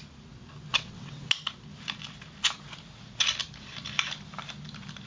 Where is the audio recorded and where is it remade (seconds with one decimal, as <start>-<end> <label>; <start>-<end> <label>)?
0.0-0.7 recorded; 0.7-1.3 remade; 1.3-5.1 recorded